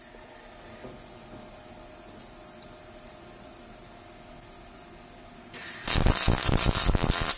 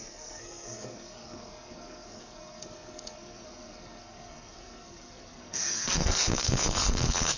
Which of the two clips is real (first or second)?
first